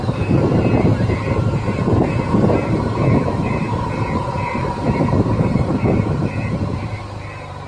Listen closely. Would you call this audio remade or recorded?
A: remade